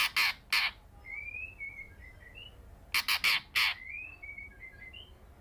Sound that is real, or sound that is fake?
real